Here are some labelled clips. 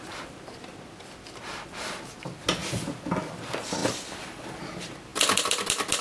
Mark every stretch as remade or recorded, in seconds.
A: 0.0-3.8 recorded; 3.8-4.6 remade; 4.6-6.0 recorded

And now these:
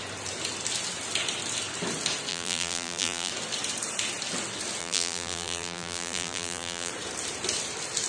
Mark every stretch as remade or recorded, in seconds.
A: 0.0-2.3 recorded; 2.3-3.3 remade; 3.3-4.8 recorded; 4.8-6.9 remade; 6.9-8.1 recorded